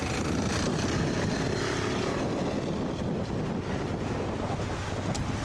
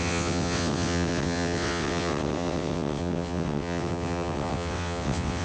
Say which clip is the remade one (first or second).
second